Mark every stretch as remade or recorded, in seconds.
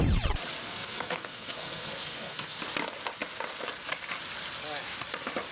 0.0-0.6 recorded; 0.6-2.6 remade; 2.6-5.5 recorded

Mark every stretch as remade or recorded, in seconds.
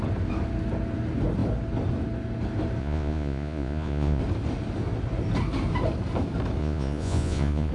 0.0-2.8 recorded; 2.8-4.2 remade; 4.2-6.6 recorded; 6.6-7.7 remade